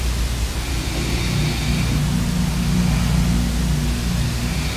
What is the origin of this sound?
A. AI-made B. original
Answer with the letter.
B